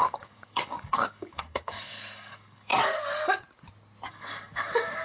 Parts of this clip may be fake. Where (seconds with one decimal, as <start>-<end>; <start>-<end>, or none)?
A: 0.0-2.7; 4.1-5.0